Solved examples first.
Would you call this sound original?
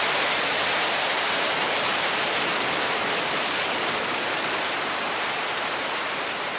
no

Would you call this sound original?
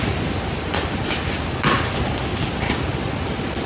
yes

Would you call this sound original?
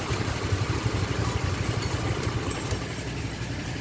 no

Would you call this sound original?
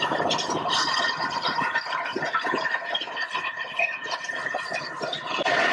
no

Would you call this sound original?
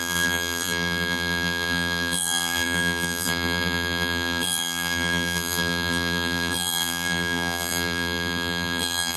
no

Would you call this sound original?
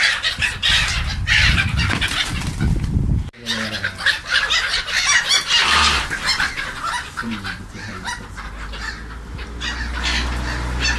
yes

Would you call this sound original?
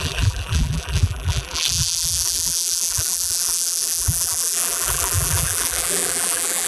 no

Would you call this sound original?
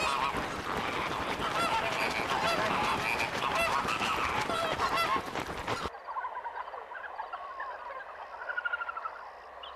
yes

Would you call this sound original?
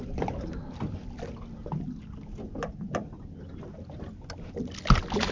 yes